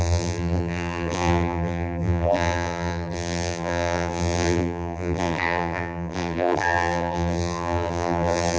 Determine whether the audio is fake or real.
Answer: fake